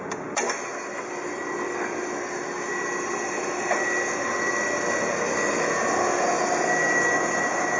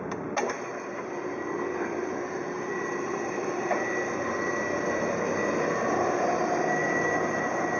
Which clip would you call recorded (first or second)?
first